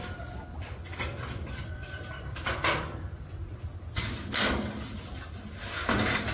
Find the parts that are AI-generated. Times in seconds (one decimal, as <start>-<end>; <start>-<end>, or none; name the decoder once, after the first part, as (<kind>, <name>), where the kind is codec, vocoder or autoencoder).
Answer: none